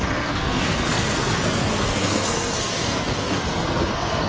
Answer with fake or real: fake